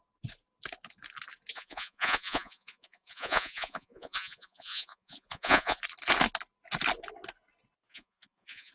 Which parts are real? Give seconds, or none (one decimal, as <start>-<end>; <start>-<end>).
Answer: 0.0-1.5; 5.8-7.9